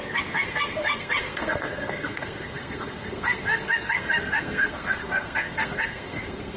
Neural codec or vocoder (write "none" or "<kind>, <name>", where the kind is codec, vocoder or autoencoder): codec, SNAC